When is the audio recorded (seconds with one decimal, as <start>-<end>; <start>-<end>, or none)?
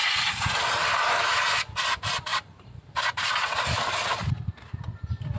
0.0-2.3; 4.8-5.4